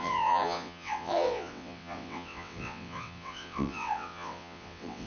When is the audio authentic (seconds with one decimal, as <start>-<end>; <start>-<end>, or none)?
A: none